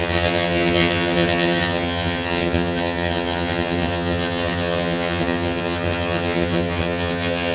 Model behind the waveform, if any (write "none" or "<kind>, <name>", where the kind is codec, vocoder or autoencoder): vocoder, HiFi-GAN